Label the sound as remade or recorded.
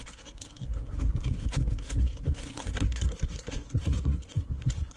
remade